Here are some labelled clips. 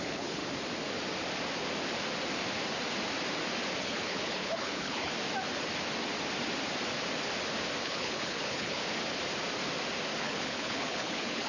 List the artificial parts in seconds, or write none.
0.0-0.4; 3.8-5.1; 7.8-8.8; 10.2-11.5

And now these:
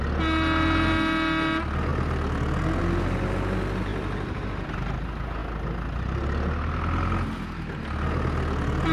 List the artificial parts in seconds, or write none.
none

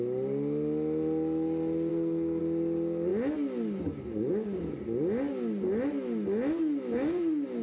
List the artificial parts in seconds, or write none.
1.9-2.4

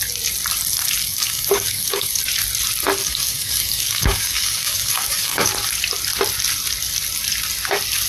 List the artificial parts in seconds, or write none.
1.0-2.2; 3.0-5.5

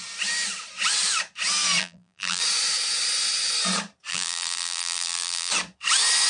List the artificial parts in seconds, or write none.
1.8-2.4; 4.1-5.5